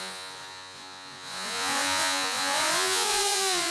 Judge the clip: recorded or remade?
remade